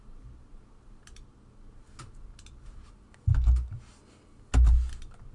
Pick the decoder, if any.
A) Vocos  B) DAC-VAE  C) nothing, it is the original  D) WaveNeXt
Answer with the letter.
C